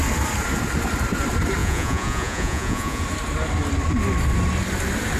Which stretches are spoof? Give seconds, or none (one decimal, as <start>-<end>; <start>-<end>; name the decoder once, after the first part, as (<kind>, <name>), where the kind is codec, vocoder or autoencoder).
1.6-3.0 (vocoder, Vocos)